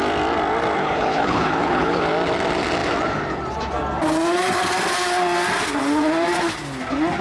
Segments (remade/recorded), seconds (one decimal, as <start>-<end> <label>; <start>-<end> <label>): 0.0-0.8 recorded; 0.8-2.0 remade; 2.0-7.2 recorded